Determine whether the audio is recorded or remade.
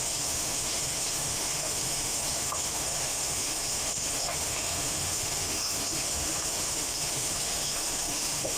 remade